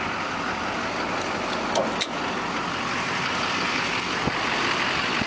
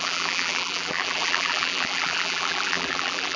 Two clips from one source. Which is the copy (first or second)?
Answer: second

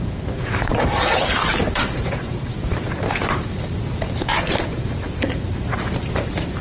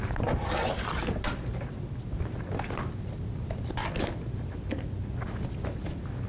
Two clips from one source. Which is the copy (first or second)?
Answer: first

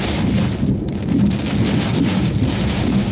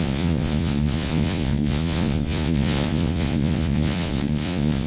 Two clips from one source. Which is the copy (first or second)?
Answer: second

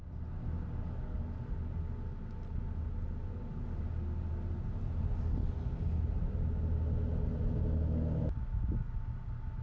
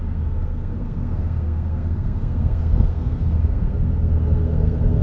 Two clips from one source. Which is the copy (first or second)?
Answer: second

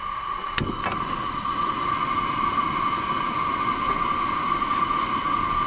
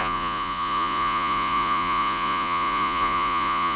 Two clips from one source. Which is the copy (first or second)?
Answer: second